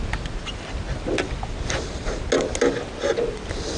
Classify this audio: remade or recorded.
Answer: recorded